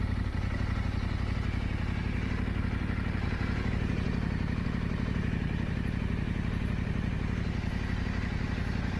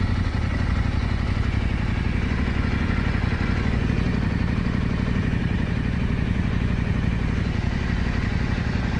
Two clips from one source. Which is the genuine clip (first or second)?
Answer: first